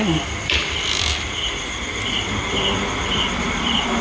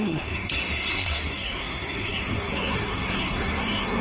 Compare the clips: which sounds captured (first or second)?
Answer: first